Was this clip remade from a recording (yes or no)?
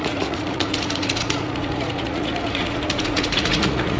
yes